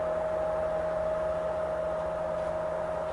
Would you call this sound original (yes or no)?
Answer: yes